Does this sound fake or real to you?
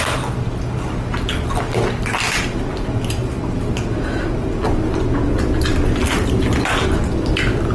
real